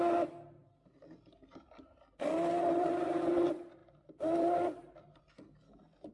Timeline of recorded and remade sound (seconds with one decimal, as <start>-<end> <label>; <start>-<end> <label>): 0.0-0.6 recorded; 0.6-3.2 remade; 3.2-3.8 recorded; 3.8-5.2 remade; 5.2-6.1 recorded

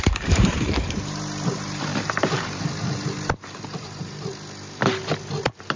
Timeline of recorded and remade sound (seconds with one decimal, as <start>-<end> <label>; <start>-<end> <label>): 0.0-4.3 remade; 4.3-5.8 recorded